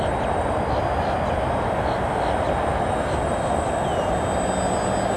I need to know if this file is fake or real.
real